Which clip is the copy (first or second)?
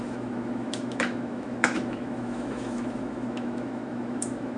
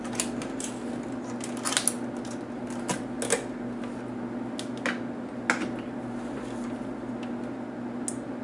first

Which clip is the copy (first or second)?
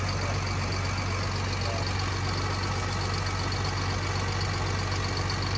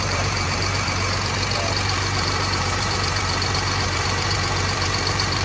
second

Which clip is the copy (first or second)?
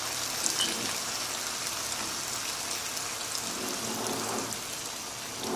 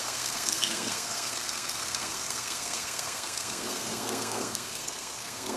second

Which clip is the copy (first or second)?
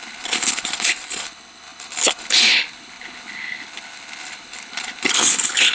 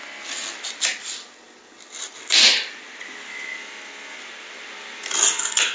first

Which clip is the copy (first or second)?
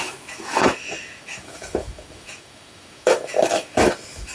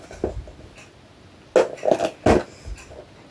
first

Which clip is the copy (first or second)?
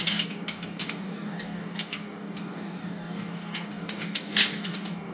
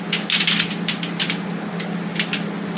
first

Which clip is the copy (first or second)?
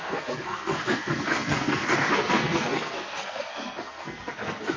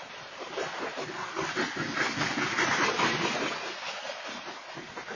first